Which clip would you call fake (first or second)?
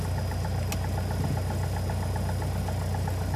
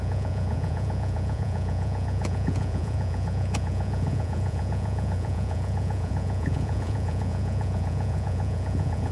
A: second